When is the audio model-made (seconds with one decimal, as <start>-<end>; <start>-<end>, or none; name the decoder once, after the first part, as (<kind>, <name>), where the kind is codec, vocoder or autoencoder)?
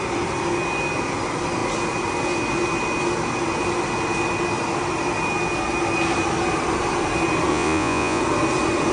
7.5-8.2 (vocoder, Vocos)